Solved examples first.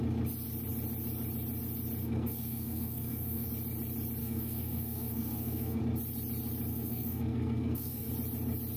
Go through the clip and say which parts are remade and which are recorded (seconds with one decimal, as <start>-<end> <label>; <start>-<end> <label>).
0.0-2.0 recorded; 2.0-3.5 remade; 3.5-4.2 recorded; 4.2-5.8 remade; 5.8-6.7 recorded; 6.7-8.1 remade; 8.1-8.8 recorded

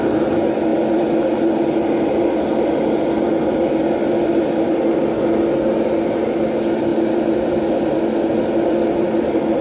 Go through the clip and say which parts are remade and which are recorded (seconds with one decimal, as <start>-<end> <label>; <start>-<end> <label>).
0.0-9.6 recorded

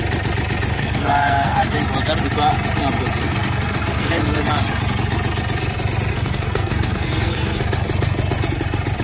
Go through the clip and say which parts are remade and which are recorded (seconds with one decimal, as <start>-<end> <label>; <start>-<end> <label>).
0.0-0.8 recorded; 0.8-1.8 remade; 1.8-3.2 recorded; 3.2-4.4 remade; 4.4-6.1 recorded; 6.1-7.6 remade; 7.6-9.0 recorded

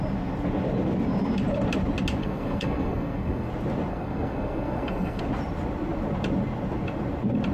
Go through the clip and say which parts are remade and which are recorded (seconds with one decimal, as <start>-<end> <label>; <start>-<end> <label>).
0.0-2.2 recorded; 2.2-3.5 remade; 3.5-3.9 recorded; 3.9-5.2 remade; 5.2-7.5 recorded